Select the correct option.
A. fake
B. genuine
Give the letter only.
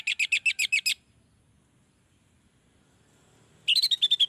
B